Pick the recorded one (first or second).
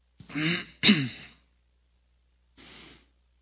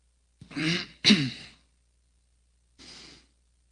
first